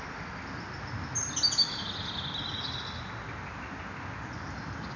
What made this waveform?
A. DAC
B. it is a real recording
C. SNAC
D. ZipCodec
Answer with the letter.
B